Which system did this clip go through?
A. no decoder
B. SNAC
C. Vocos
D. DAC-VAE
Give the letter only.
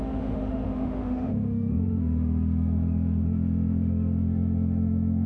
D